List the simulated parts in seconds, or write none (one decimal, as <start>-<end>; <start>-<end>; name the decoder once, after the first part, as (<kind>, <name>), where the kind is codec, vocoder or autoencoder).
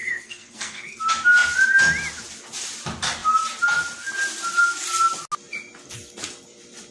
0.0-1.0 (codec, SNAC)